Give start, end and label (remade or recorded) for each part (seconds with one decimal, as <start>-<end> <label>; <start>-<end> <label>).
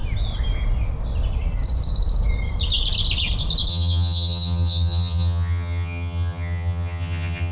0.0-3.7 recorded; 3.7-7.5 remade